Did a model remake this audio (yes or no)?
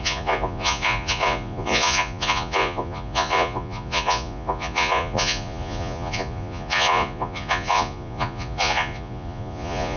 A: yes